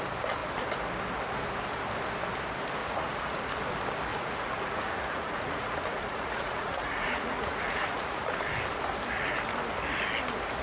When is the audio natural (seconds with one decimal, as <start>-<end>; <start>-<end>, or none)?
0.0-2.8; 3.6-4.1; 8.4-10.6